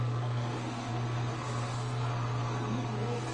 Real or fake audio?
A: fake